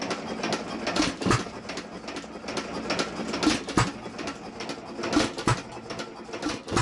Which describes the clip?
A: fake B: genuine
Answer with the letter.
B